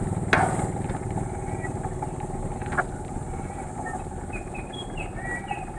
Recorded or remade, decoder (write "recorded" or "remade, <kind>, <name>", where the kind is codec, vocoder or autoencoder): recorded